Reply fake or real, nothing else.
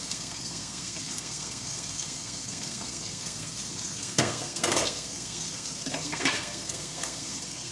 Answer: fake